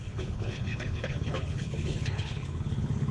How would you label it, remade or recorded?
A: remade